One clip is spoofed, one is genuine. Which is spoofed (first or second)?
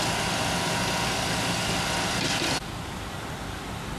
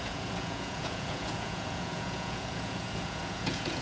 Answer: second